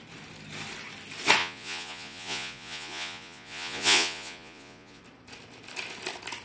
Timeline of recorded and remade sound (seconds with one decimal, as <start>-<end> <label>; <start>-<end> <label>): 0.0-1.4 recorded; 1.4-5.0 remade; 5.0-6.4 recorded

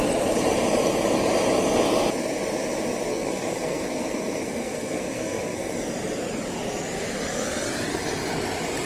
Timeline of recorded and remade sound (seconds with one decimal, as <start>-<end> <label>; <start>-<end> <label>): 0.0-3.1 recorded; 3.1-5.7 remade; 5.7-8.9 recorded

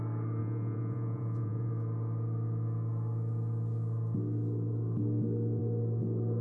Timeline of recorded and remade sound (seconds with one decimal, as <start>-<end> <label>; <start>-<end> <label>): 0.0-0.4 recorded; 0.4-1.7 remade; 1.7-6.4 recorded

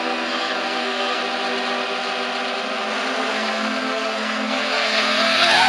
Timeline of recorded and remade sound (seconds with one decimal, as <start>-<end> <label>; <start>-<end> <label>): 0.0-1.2 remade; 1.2-3.3 recorded; 3.3-5.7 remade

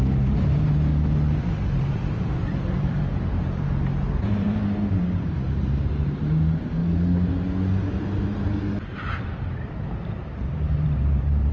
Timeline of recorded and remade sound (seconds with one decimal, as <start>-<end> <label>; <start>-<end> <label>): 0.0-0.9 remade; 0.9-1.8 recorded; 1.8-6.8 remade; 6.8-10.4 recorded; 10.4-11.5 remade

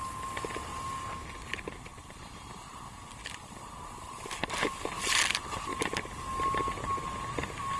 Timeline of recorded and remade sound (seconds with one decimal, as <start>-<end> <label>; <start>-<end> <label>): 0.0-7.8 recorded

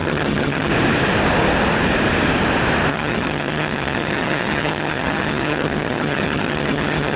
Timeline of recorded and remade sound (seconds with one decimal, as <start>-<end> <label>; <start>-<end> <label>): 0.0-0.7 remade; 0.7-2.9 recorded; 2.9-7.2 remade

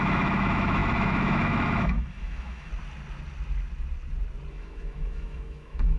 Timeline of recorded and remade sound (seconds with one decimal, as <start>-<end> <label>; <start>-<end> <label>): 0.0-2.7 remade; 2.7-4.5 recorded; 4.5-6.0 remade